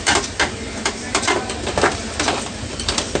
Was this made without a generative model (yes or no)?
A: no